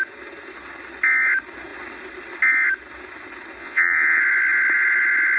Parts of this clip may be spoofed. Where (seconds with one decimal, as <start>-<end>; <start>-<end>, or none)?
3.6-4.2